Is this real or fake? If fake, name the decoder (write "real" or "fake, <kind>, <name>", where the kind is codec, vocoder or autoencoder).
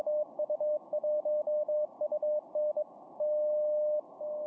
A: real